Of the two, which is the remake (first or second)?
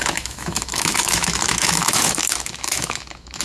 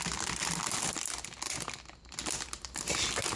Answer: first